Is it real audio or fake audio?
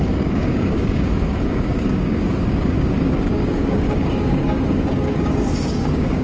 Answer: fake